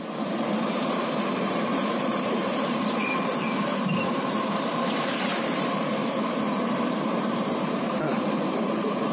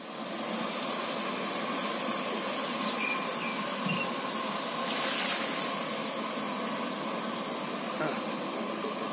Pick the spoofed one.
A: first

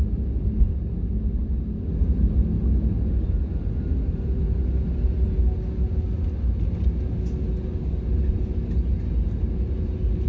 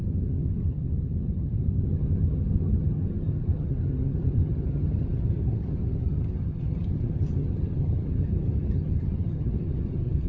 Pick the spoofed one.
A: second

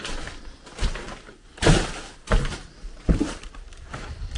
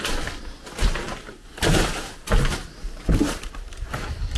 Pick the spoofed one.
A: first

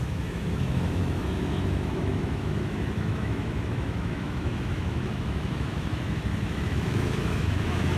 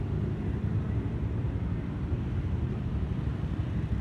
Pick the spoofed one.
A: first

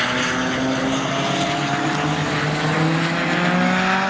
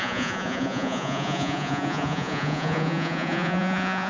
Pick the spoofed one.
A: second